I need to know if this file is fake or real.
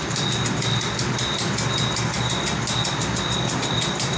real